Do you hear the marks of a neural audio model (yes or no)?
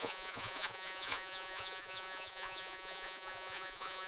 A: yes